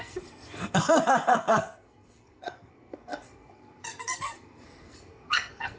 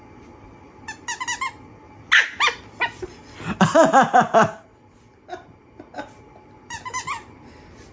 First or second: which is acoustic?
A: second